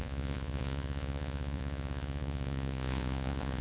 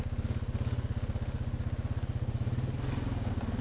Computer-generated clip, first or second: first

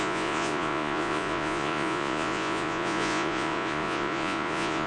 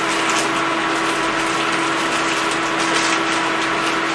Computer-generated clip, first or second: first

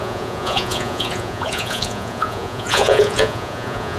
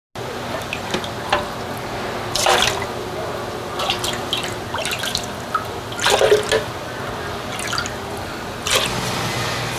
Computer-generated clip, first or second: first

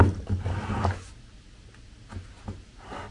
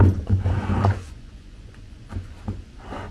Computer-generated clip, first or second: second